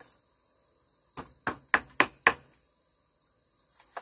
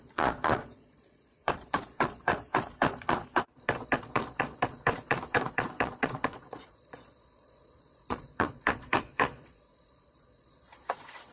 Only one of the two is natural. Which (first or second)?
first